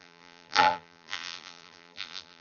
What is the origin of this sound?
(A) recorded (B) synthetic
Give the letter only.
B